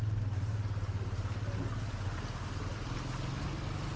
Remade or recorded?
recorded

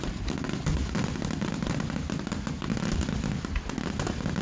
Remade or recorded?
recorded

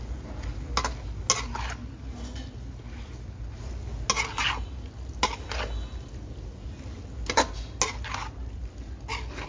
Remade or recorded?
recorded